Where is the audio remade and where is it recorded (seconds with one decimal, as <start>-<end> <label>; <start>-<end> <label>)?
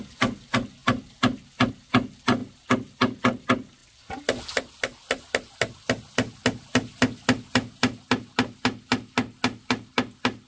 0.0-10.5 recorded